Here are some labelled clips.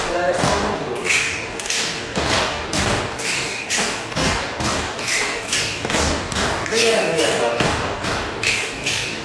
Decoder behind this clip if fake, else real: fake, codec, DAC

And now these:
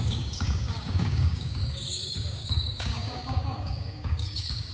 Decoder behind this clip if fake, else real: fake, codec, DAC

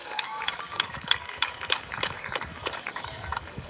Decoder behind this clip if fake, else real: fake, codec, DAC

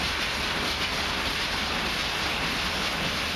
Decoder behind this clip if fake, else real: real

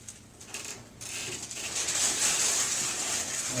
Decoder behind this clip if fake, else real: real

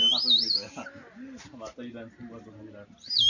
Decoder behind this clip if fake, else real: real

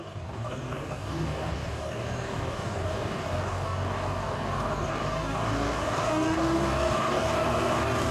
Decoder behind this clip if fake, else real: fake, codec, DAC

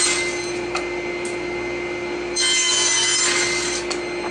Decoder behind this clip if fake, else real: real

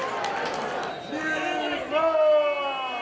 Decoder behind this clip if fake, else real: real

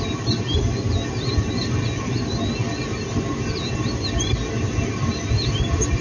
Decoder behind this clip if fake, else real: real